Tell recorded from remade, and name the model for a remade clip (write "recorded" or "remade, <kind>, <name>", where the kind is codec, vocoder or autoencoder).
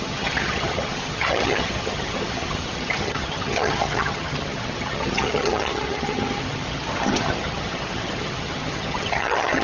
remade, vocoder, HiFi-GAN